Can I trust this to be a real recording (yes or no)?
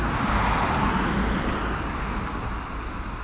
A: yes